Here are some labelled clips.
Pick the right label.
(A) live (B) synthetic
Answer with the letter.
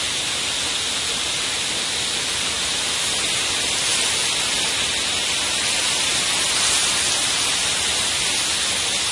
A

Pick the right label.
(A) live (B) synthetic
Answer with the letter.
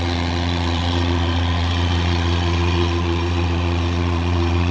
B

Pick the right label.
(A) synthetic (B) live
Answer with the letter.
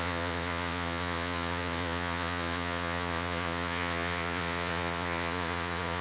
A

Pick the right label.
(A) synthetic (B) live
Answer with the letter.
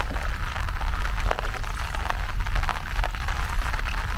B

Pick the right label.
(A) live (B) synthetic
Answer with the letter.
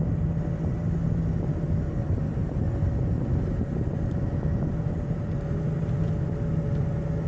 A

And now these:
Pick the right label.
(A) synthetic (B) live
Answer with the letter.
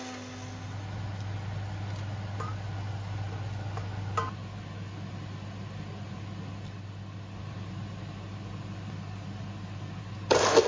B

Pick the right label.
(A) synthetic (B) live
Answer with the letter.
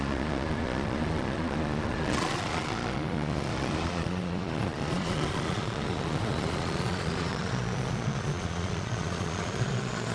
A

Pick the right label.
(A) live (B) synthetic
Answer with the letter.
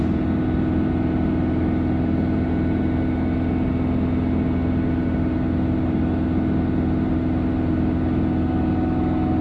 A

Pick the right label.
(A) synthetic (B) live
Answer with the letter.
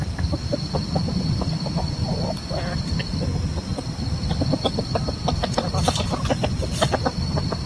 B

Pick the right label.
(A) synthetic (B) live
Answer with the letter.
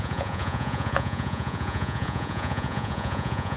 A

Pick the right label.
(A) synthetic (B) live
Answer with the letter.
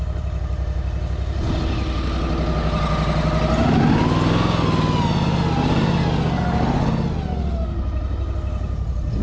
B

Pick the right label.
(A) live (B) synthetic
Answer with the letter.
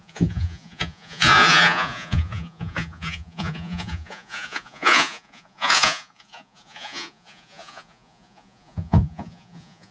B